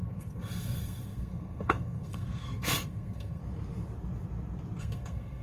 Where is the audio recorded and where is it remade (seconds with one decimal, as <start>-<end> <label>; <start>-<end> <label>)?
0.0-3.4 remade; 3.4-4.8 recorded; 4.8-5.4 remade